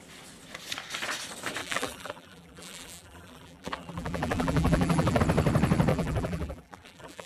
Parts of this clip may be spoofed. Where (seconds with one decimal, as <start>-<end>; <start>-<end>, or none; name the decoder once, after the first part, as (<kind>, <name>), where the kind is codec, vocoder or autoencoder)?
1.6-5.2 (vocoder, BigVGAN v2); 5.9-7.3